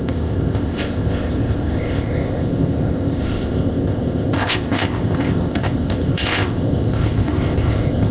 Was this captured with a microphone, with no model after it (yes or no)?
no